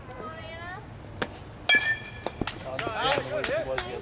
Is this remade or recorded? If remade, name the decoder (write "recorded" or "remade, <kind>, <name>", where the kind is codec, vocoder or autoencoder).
recorded